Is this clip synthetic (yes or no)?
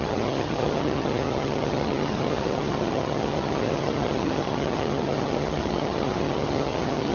yes